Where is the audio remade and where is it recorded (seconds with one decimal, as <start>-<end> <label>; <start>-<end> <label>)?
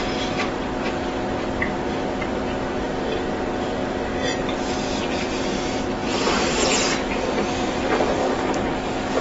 0.0-8.2 recorded; 8.2-9.2 remade